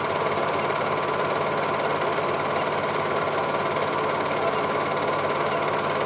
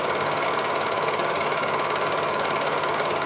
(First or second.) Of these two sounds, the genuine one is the first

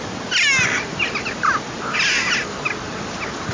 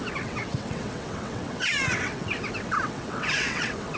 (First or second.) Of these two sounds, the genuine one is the first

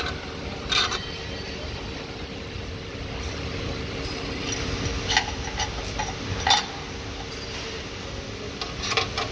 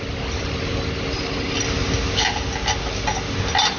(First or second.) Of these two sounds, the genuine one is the second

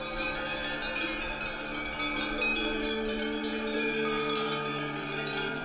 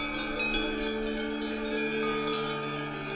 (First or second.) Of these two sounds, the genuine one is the second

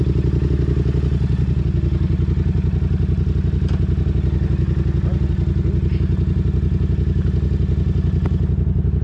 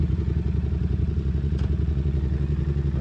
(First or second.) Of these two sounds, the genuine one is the first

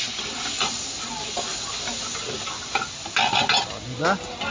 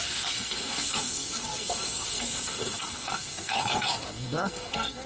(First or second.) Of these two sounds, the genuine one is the first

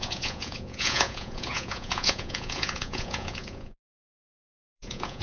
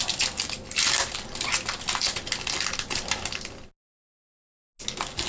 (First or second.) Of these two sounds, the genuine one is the second